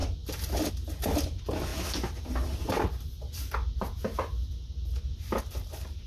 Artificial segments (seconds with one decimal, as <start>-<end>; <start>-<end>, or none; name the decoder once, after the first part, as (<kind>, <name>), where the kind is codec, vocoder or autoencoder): 0.7-1.7 (vocoder, BigVGAN v2); 5.4-6.1